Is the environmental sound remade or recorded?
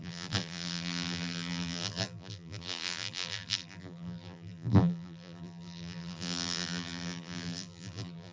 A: remade